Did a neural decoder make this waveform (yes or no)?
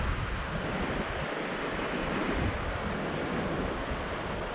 no